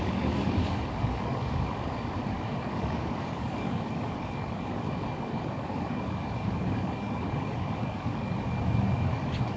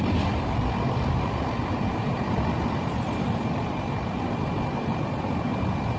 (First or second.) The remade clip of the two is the first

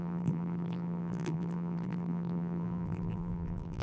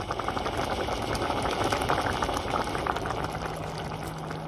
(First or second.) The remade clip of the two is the first